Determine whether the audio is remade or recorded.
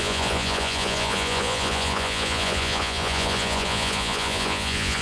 remade